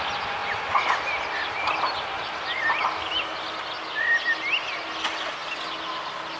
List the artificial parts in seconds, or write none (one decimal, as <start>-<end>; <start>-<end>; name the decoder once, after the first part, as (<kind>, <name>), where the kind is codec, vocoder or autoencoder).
none